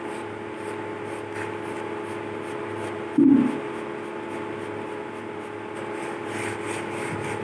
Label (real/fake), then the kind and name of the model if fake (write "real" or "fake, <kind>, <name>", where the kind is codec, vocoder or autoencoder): real